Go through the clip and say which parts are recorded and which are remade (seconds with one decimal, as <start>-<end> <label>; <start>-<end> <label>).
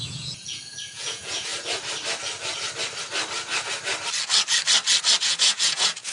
0.0-1.5 remade; 1.5-5.2 recorded; 5.2-6.1 remade